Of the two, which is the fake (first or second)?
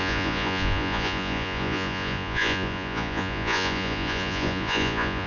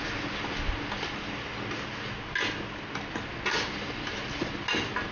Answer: first